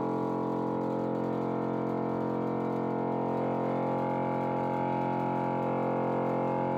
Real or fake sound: real